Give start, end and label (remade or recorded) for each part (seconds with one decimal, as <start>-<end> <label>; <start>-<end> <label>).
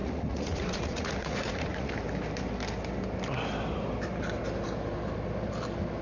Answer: 0.0-1.9 remade; 1.9-6.0 recorded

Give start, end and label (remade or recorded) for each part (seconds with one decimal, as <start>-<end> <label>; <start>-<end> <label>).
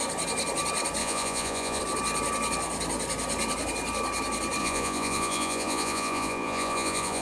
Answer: 0.0-1.0 recorded; 1.0-1.8 remade; 1.8-4.6 recorded; 4.6-7.2 remade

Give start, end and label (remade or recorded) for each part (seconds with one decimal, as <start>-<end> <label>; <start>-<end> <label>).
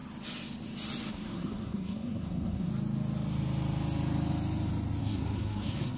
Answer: 0.0-1.1 recorded; 1.1-2.7 remade; 2.7-5.0 recorded; 5.0-6.0 remade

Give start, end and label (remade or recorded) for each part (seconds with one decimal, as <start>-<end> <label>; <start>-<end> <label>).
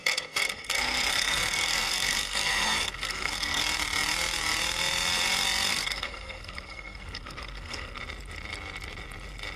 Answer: 0.0-3.6 remade; 3.6-5.7 recorded; 5.7-8.0 remade; 8.0-9.6 recorded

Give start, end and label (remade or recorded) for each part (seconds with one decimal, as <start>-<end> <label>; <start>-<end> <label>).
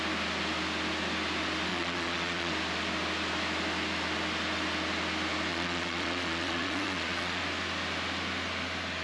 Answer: 0.0-1.7 recorded; 1.7-2.5 remade; 2.5-5.5 recorded; 5.5-7.4 remade; 7.4-9.0 recorded